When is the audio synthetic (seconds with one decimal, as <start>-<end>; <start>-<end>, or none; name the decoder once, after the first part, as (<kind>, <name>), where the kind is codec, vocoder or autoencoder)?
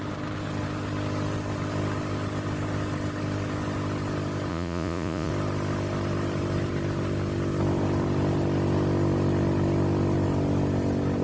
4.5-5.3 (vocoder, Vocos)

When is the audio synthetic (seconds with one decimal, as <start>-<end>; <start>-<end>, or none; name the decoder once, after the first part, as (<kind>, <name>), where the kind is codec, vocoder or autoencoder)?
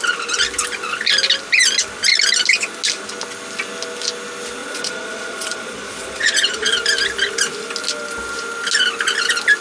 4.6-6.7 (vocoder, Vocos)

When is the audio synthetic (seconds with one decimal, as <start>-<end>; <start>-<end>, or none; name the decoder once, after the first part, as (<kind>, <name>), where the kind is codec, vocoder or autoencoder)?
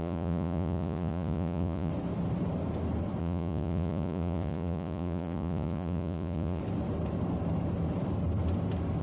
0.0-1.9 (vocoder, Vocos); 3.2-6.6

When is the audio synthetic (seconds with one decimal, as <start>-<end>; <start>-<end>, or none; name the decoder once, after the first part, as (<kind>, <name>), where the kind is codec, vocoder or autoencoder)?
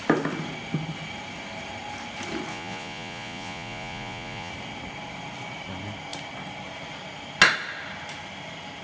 2.5-4.5 (vocoder, Vocos)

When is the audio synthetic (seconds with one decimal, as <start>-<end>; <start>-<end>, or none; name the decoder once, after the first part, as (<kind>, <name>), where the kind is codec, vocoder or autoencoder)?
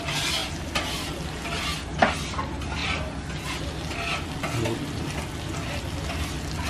none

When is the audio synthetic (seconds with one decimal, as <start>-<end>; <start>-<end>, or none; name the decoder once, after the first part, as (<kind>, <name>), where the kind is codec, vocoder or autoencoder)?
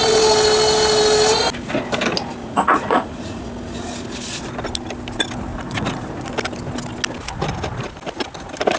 2.4-3.4 (vocoder, Vocos); 5.5-6.3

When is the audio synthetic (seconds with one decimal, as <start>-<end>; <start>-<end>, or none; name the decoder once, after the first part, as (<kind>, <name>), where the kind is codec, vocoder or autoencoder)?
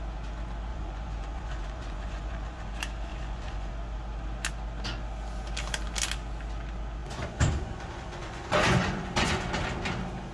0.7-2.7 (vocoder, Vocos); 3.1-3.7; 7.0-9.5